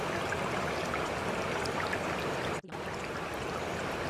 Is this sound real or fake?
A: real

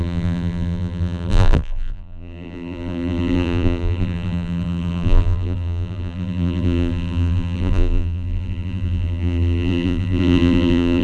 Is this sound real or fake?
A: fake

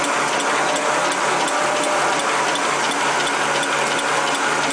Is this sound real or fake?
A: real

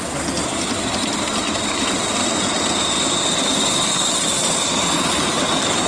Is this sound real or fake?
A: real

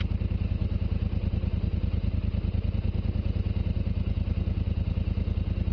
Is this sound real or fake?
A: real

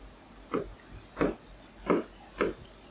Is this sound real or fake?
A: real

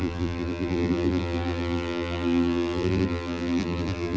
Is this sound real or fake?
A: fake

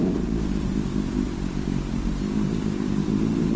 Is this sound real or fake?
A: fake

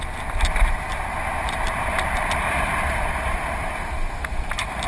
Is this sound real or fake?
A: fake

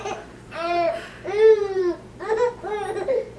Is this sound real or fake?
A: fake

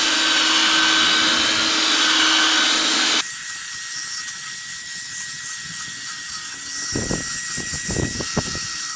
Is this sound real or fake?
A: real